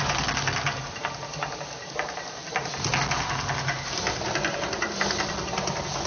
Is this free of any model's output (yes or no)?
yes